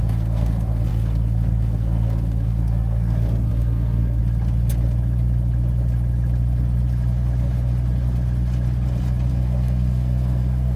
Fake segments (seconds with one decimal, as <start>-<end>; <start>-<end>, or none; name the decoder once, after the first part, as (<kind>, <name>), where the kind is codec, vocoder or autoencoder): 0.0-4.2 (codec, SNAC); 9.3-10.8